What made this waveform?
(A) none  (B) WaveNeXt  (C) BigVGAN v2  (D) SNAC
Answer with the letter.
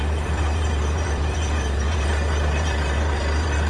C